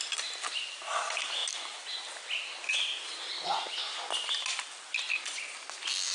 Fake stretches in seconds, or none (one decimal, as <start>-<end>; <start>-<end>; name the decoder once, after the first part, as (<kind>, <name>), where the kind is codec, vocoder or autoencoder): none